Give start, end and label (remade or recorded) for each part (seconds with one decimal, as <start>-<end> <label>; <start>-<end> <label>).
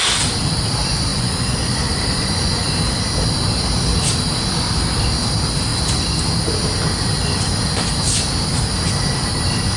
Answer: 0.0-1.1 recorded; 1.1-2.7 remade; 2.7-9.8 recorded